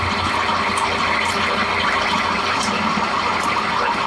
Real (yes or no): yes